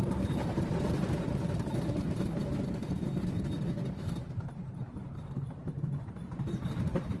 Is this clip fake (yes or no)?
yes